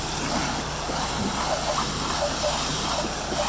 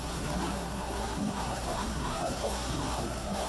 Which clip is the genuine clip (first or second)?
first